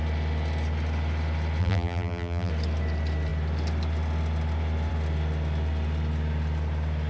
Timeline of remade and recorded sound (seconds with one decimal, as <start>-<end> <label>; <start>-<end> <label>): 0.0-1.6 recorded; 1.6-2.5 remade; 2.5-7.1 recorded